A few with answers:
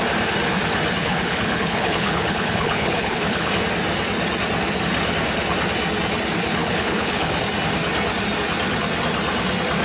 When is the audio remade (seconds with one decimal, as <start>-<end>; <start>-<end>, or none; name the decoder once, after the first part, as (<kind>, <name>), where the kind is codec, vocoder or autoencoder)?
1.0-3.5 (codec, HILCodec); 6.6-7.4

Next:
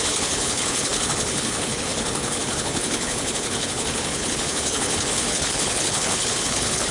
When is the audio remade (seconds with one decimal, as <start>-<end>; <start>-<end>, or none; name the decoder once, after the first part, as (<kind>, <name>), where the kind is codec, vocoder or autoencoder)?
0.0-6.9 (codec, HILCodec)

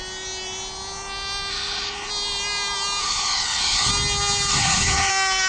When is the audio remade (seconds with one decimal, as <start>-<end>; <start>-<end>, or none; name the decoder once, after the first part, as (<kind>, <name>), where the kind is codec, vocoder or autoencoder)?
1.5-2.1 (codec, HILCodec); 3.0-3.9; 4.5-5.1

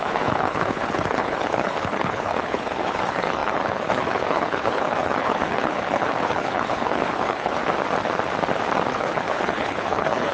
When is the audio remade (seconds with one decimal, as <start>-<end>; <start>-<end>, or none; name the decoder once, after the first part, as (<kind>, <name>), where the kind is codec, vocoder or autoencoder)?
0.0-7.6 (codec, HILCodec); 8.9-10.3

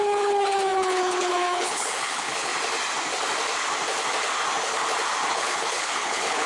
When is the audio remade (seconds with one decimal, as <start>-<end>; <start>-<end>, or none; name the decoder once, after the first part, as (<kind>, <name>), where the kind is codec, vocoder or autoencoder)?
0.0-2.5 (codec, HILCodec); 5.3-6.5

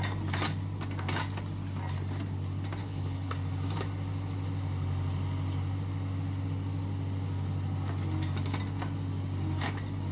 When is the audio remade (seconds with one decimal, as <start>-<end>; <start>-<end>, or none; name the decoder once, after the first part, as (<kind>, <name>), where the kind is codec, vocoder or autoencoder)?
2.8-3.3 (codec, HILCodec)

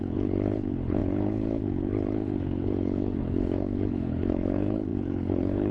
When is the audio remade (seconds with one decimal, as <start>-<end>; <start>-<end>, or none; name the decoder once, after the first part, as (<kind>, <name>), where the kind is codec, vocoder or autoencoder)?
0.0-5.7 (codec, HILCodec)